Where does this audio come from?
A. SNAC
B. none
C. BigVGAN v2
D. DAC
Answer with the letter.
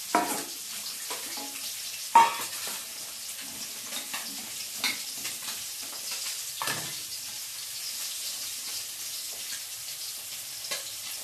B